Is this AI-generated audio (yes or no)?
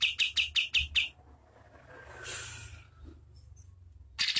no